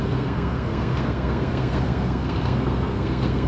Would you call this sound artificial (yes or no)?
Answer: yes